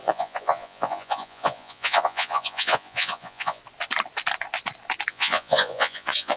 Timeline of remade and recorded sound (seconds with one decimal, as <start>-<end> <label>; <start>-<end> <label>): 0.0-3.6 remade; 3.6-5.1 recorded; 5.1-6.4 remade

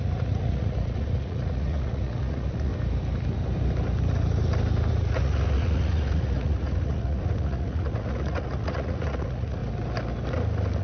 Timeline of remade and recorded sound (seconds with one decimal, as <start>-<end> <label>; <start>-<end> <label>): 0.0-2.7 remade; 2.7-4.9 recorded; 4.9-9.6 remade; 9.6-10.8 recorded

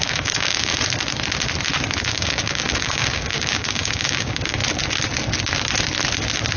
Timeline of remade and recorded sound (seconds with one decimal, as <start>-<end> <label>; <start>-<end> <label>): 0.0-0.7 remade; 0.7-2.0 recorded; 2.0-4.6 remade; 4.6-6.6 recorded

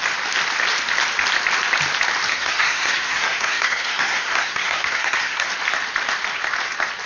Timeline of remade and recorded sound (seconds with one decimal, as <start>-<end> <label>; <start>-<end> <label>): 0.0-2.3 recorded; 2.3-5.5 remade; 5.5-7.1 recorded

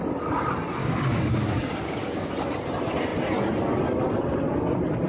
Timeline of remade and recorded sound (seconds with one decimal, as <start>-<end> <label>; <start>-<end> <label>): 0.0-0.8 recorded; 0.8-2.3 remade; 2.3-5.1 recorded

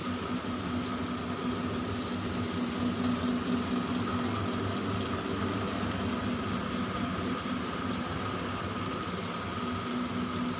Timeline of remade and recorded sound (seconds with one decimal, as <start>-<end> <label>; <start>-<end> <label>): 0.0-10.6 recorded

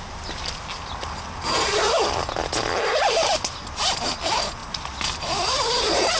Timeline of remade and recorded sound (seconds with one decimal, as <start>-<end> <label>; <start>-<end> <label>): 0.0-6.2 recorded

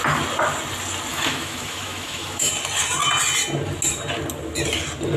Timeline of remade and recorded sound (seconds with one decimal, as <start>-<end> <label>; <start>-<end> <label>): 0.0-1.1 recorded; 1.1-2.5 remade; 2.5-5.2 recorded